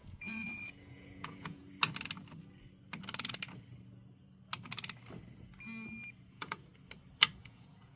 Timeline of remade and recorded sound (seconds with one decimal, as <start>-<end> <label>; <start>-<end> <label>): 0.0-1.6 remade; 1.6-6.3 recorded; 6.3-6.7 remade; 6.7-7.4 recorded; 7.4-8.0 remade